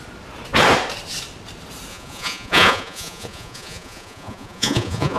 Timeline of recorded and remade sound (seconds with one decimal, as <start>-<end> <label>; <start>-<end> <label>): 0.0-1.9 recorded; 1.9-5.2 remade